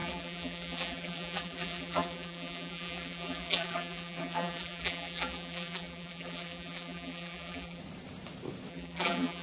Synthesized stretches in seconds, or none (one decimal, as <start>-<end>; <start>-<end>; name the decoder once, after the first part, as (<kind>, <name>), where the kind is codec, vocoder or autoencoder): 0.0-7.8 (vocoder, BigVGAN v2); 8.7-9.4